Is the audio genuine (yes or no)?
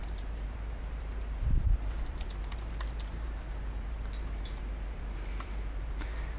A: no